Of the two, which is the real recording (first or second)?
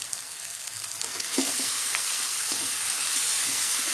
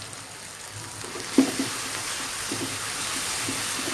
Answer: second